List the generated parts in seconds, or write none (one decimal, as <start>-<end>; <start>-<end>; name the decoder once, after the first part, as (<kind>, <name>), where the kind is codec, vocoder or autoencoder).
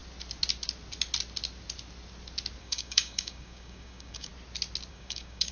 2.6-4.3 (codec, DAC); 4.9-5.5